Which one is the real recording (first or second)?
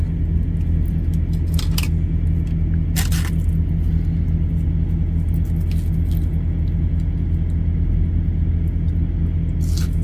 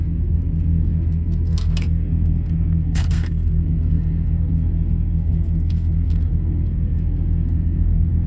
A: first